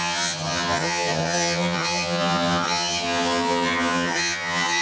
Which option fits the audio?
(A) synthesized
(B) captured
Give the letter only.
A